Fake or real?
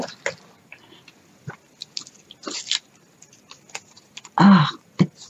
fake